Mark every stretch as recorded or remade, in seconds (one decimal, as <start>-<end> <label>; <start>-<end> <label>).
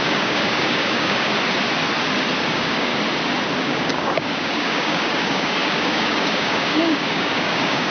0.0-1.3 remade; 1.3-2.5 recorded; 2.5-2.9 remade; 2.9-3.6 recorded; 3.6-7.9 remade